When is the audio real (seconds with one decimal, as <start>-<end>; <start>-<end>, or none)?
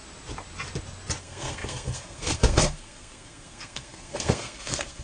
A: 0.0-1.2